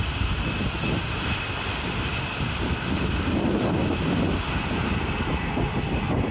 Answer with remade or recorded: recorded